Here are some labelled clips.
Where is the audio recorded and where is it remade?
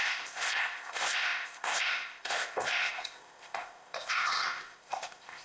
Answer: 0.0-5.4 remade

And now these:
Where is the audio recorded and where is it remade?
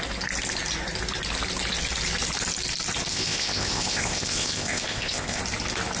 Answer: 0.0-3.1 recorded; 3.1-5.4 remade; 5.4-6.0 recorded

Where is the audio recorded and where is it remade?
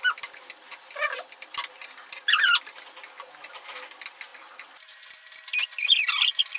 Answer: 0.0-6.6 recorded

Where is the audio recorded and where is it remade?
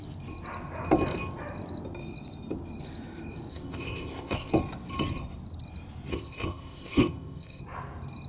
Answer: 0.0-3.5 recorded; 3.5-4.5 remade; 4.5-6.1 recorded; 6.1-7.6 remade; 7.6-8.3 recorded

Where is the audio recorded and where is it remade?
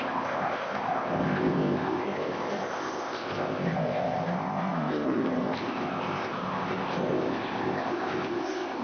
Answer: 0.0-8.8 remade